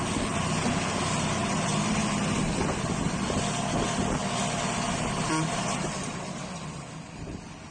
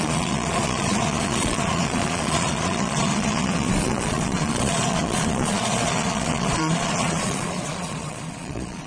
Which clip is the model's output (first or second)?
second